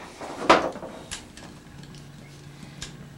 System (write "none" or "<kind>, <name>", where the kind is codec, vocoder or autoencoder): none